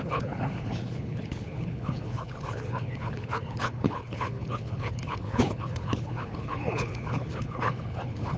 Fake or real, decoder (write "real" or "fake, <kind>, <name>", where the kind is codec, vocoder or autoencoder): fake, codec, HILCodec